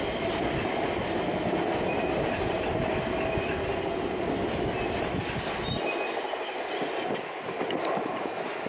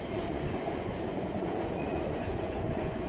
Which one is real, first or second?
first